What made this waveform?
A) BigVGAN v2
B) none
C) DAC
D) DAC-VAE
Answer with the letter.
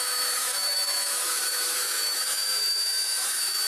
D